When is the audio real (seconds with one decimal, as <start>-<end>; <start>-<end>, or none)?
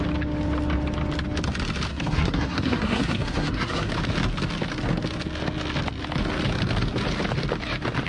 0.0-1.9; 3.9-8.1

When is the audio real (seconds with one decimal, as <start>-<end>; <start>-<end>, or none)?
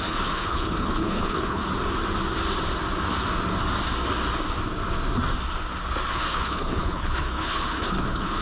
1.6-6.1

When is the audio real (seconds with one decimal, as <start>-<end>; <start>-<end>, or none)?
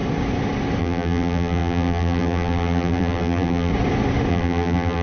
0.0-0.8; 3.7-4.3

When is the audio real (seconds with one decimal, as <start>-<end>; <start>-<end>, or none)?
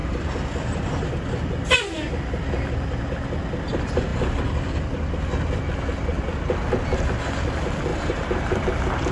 0.9-7.9; 8.6-9.1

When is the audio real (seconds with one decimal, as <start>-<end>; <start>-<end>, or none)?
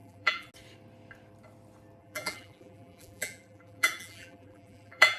0.5-2.0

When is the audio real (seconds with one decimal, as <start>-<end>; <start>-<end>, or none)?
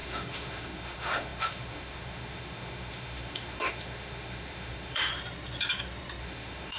5.1-6.2